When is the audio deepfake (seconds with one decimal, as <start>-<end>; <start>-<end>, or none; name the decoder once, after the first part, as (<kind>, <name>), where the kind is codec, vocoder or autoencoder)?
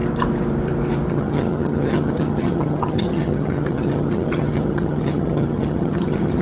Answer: 1.1-6.4 (vocoder, HiFi-GAN)